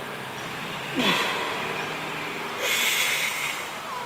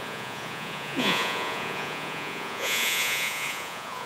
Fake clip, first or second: second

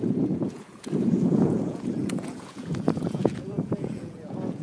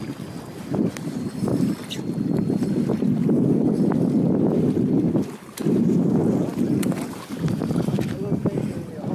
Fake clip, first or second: first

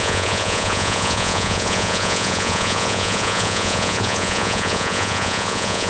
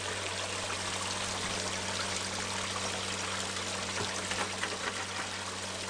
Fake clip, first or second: first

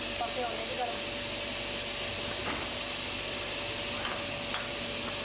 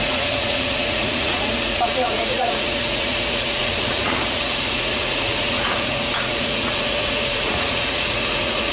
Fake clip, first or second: second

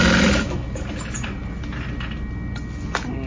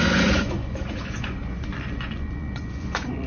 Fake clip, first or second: second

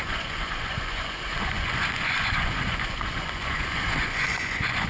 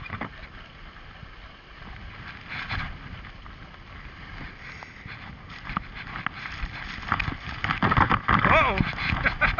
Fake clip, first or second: first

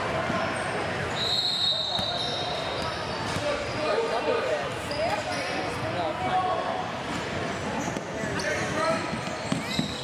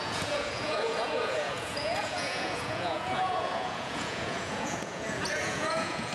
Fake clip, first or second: second